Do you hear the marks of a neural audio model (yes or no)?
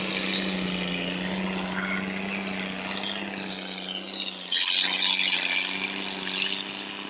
no